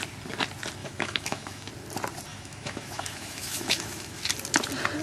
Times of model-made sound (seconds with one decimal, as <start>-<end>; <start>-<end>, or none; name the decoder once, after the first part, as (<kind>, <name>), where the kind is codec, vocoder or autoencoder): 0.8-1.7 (autoencoder, DAC-VAE); 2.3-4.2